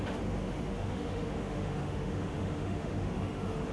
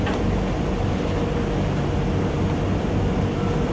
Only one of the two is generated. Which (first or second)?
first